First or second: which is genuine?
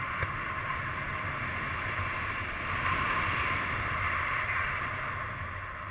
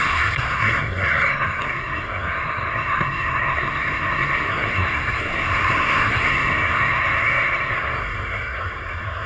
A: first